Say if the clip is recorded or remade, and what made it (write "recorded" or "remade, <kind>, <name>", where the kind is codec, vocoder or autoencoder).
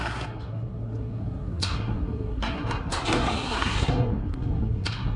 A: remade, codec, SNAC